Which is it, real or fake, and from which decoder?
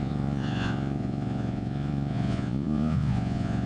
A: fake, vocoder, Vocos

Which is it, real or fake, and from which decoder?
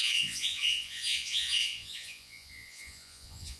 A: fake, vocoder, Vocos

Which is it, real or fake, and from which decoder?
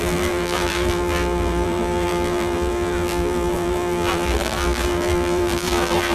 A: fake, vocoder, BigVGAN v2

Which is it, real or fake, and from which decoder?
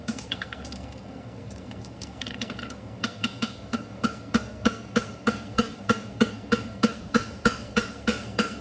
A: fake, codec, SNAC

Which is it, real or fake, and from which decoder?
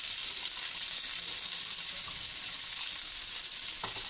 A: real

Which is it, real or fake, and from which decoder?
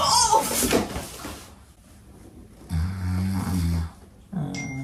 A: real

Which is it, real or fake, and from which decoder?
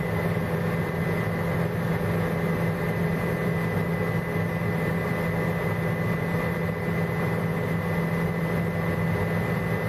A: real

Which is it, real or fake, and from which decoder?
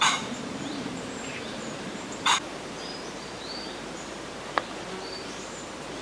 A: fake, vocoder, BigVGAN v2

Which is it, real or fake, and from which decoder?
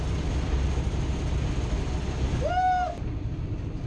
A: real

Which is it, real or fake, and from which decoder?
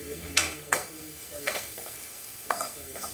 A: fake, codec, SNAC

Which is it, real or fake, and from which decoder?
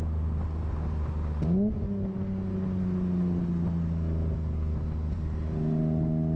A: real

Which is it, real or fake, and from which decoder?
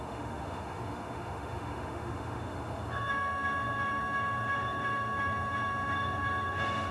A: fake, autoencoder, DAC-VAE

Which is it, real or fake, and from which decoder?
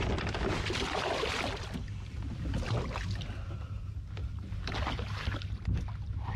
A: real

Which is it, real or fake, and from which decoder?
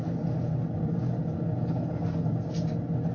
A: real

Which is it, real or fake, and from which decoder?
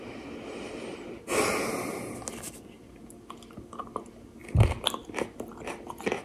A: real